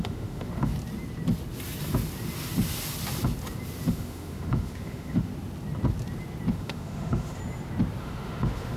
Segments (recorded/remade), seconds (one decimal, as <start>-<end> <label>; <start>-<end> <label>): 0.0-0.7 remade; 0.7-3.9 recorded; 3.9-5.3 remade; 5.3-6.5 recorded; 6.5-7.4 remade; 7.4-8.0 recorded; 8.0-8.8 remade